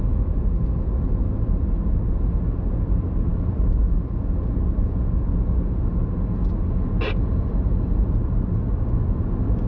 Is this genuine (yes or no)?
yes